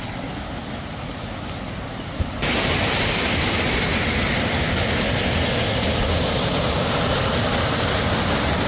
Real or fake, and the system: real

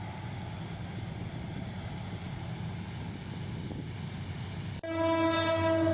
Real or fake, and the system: real